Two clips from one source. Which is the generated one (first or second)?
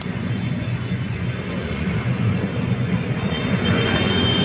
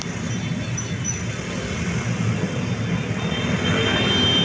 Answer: first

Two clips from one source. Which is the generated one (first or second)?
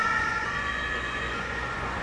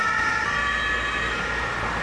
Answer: first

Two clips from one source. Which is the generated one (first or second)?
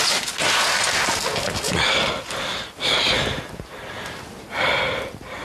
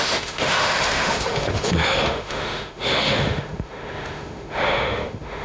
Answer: second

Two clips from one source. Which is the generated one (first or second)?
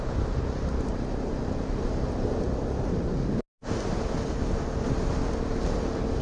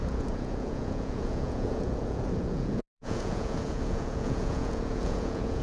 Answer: second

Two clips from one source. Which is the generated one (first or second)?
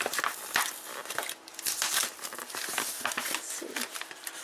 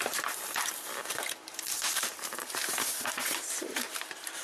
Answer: second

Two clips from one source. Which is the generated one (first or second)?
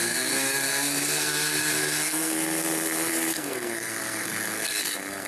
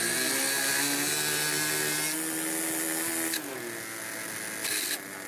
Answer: first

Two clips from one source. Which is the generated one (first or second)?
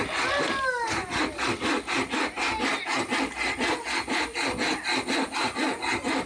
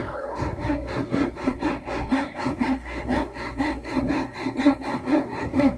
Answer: second